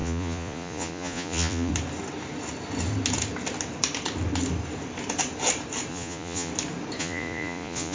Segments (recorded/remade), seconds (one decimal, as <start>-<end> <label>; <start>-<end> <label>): 0.0-1.7 remade; 1.7-5.9 recorded; 5.9-6.5 remade; 6.5-7.0 recorded; 7.0-7.9 remade